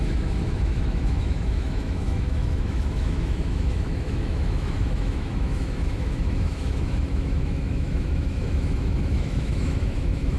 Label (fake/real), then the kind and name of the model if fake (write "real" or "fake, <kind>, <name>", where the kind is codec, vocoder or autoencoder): fake, autoencoder, DAC-VAE